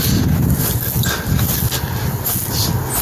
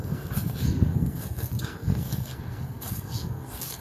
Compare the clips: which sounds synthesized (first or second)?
second